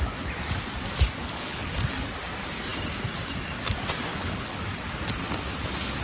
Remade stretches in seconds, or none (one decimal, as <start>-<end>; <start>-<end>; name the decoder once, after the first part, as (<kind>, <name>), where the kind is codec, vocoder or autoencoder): 1.2-1.7 (codec, HILCodec); 4.1-4.6